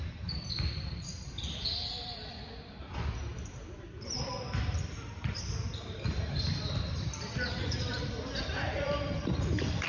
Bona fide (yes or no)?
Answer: no